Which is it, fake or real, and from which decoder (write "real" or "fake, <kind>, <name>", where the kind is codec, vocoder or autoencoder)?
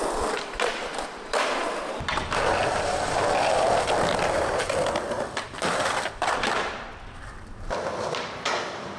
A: fake, vocoder, BigVGAN v2